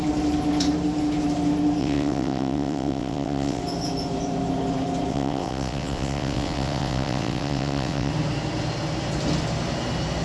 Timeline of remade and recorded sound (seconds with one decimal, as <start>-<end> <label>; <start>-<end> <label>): 0.0-1.8 recorded; 1.8-3.6 remade; 3.6-5.1 recorded; 5.1-8.1 remade; 8.1-10.2 recorded